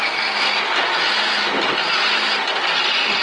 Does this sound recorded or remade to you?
recorded